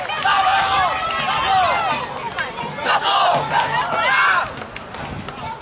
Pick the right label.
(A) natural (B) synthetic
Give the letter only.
A